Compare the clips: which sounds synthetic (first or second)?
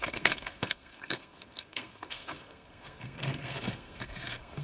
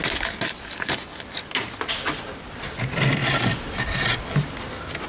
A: first